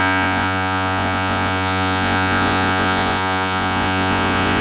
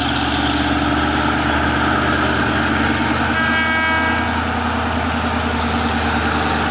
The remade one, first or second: first